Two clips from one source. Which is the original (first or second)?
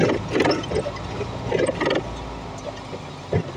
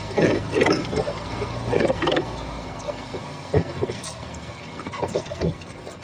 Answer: first